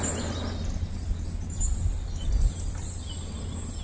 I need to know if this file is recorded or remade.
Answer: recorded